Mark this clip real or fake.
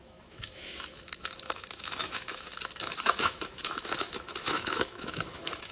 fake